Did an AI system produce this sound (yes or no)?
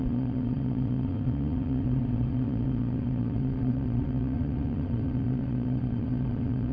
yes